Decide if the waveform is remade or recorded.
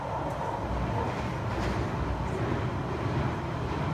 recorded